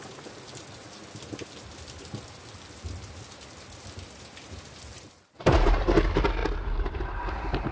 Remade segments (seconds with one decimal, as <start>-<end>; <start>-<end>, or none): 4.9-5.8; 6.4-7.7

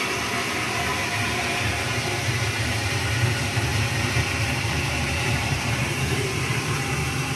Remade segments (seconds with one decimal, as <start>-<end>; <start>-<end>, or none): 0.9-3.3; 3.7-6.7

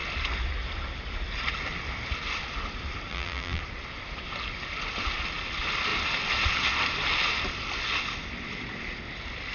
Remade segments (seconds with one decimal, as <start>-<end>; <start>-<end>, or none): 3.1-3.6

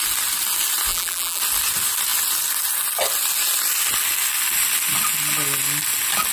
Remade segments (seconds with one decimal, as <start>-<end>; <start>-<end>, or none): 0.9-1.4